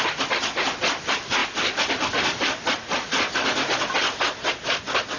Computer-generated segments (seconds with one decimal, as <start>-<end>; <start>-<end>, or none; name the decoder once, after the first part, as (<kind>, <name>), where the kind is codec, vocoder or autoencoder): none